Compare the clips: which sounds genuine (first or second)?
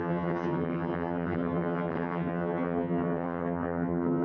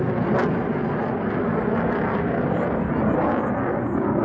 second